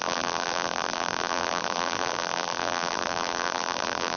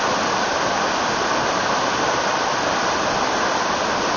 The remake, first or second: first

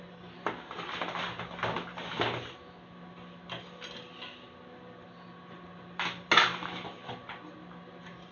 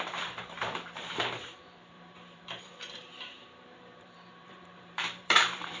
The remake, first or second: second